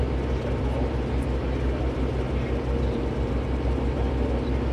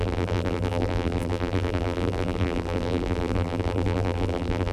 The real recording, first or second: first